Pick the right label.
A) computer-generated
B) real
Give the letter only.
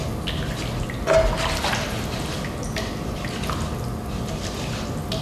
B